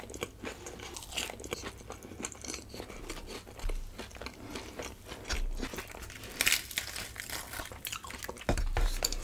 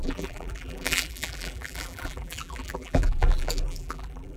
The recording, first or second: first